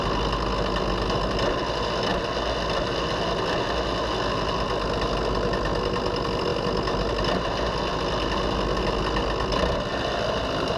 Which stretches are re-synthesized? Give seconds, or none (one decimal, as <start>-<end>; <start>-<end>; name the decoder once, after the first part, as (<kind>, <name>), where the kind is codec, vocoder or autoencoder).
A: none